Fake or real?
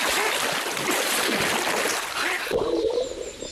real